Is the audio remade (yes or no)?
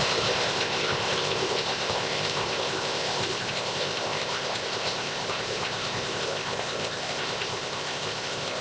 yes